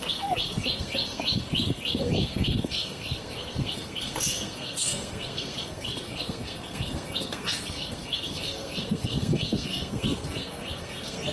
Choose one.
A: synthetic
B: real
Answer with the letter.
A